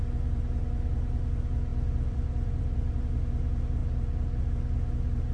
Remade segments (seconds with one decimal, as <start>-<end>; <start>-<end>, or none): 1.7-3.0